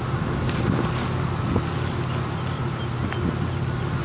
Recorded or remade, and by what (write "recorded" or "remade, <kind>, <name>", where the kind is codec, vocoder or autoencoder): recorded